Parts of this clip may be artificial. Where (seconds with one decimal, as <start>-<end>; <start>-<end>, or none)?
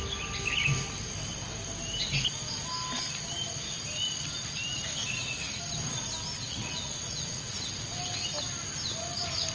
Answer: 5.0-5.6; 6.4-7.9